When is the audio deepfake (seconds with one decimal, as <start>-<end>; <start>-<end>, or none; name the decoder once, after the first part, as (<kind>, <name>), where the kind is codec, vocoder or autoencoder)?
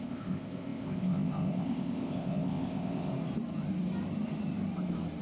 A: 0.0-3.1 (codec, ZipCodec)